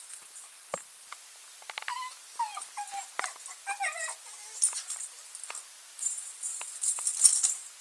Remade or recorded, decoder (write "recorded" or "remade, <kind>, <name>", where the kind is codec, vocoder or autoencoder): recorded